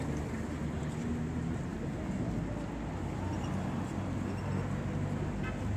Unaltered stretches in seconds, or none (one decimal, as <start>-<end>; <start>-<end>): 0.0-5.8